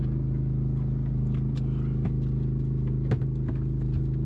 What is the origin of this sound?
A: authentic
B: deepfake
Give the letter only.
A